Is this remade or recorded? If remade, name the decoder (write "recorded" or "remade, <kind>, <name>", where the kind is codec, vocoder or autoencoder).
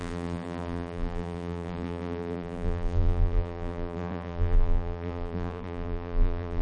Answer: remade, vocoder, BigVGAN v2